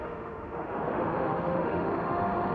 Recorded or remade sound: remade